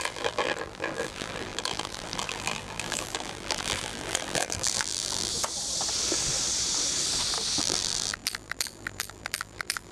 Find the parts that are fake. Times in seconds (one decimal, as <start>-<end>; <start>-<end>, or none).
0.0-5.3; 7.6-9.9